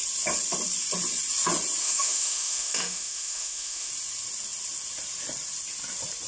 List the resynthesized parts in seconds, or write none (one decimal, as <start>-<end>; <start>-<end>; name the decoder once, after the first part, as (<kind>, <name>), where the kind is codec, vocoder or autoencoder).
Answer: 1.8-3.9 (autoencoder, DAC-VAE)